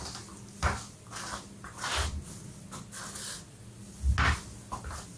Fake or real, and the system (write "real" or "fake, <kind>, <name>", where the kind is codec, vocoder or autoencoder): real